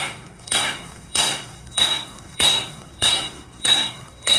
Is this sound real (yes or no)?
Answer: no